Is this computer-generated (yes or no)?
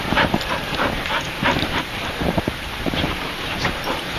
yes